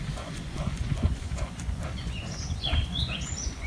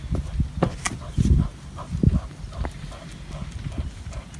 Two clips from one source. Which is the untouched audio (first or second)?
second